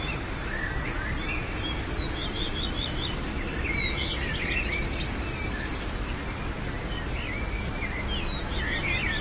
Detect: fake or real fake